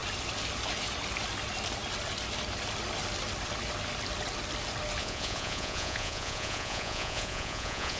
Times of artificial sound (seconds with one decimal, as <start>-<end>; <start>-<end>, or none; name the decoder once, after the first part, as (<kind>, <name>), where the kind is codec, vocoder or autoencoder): 5.0-8.0 (vocoder, Vocos)